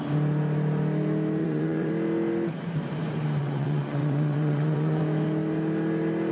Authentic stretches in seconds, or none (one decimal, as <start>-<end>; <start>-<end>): 0.0-1.4; 1.9-3.4; 5.0-6.3

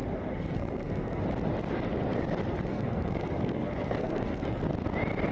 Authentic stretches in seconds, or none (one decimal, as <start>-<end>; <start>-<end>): 1.2-2.7; 4.6-5.3

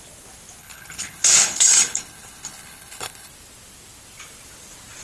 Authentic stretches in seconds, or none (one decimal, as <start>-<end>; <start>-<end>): 0.0-0.6; 3.3-5.0

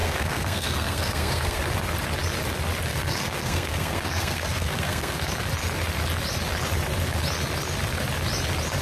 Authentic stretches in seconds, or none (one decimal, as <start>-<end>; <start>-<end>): 1.6-2.9; 5.3-8.8

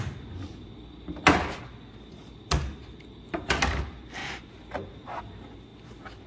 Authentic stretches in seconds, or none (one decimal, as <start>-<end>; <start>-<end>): 0.0-4.2; 5.2-6.3